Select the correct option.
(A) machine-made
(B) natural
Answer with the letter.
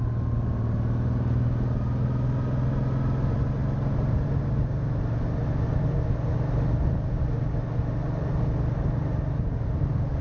B